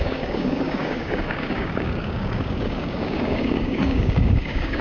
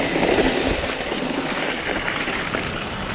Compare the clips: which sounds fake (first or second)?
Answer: first